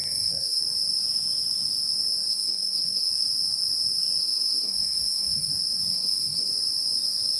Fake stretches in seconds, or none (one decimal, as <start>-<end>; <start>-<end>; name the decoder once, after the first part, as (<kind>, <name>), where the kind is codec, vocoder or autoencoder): 0.0-0.6 (codec, SNAC); 2.3-3.1; 4.2-5.5; 5.9-6.5